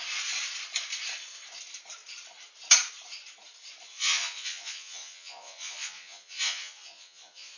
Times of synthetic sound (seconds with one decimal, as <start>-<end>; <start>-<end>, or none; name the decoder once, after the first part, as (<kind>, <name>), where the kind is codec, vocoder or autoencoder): 3.9-7.6 (vocoder, Vocos)